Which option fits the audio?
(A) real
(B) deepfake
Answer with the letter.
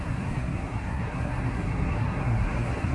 B